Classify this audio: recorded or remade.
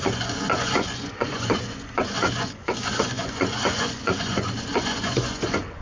remade